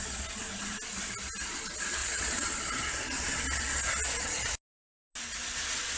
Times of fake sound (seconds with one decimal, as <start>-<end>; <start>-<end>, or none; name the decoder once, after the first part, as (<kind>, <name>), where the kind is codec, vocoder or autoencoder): 2.0-2.5 (vocoder, WaveNeXt)